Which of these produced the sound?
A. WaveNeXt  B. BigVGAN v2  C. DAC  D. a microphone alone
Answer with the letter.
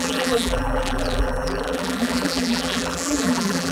B